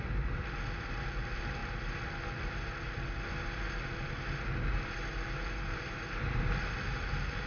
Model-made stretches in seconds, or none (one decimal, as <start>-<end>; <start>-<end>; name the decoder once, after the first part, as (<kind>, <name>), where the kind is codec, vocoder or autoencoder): none